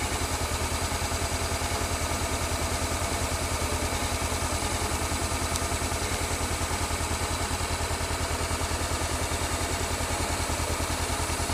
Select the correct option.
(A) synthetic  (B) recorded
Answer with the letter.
B